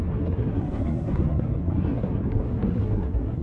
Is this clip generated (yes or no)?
yes